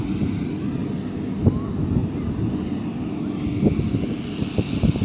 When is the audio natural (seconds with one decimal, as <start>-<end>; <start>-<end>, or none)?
0.0-5.0